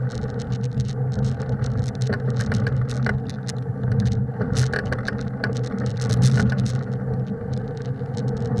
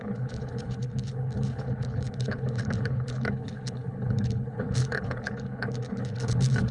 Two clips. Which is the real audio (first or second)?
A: first